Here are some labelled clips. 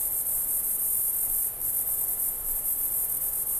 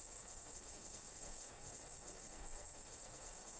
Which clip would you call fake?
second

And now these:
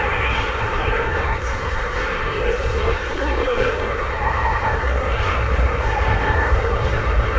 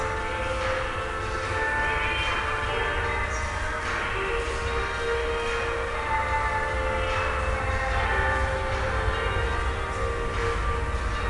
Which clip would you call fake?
first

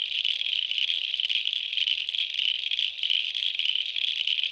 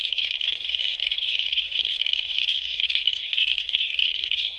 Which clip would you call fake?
second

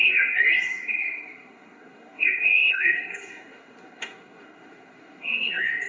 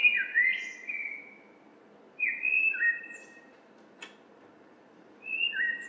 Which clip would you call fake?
first